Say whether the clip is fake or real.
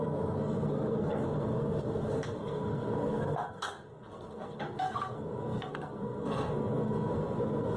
fake